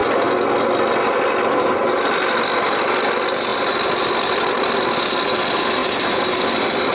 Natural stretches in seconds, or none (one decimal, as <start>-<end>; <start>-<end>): 0.0-3.5; 4.1-5.8; 6.4-6.9